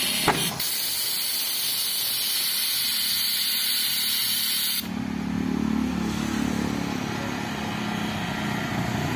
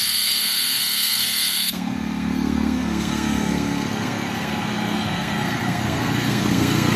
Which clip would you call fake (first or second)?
second